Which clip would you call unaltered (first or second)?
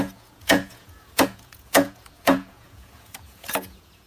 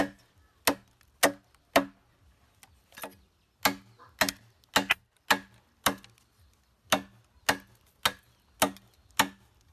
second